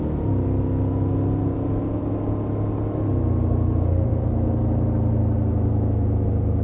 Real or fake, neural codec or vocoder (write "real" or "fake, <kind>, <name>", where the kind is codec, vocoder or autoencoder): real